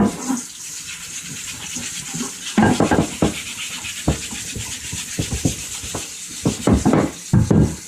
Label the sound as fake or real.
fake